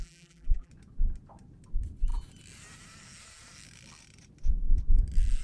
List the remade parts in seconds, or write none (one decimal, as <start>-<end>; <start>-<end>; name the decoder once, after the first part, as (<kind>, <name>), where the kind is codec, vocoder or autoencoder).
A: 0.0-0.7 (vocoder, BigVGAN v2)